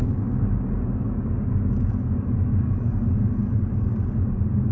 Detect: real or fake fake